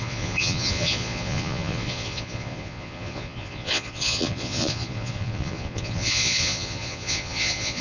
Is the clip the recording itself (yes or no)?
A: no